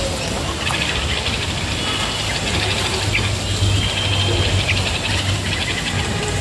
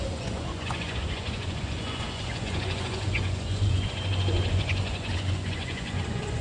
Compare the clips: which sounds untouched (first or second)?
first